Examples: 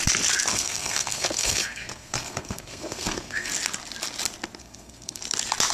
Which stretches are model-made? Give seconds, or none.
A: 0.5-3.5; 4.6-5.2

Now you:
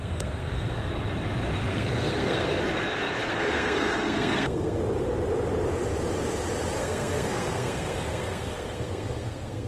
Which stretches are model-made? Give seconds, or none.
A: 0.0-0.9; 1.7-2.6; 3.3-4.8; 6.8-9.7

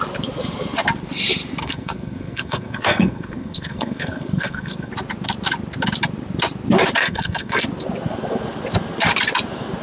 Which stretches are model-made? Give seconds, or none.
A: 1.6-4.9; 7.0-7.6

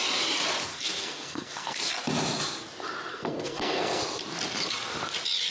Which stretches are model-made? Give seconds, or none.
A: 0.7-1.9; 3.1-4.0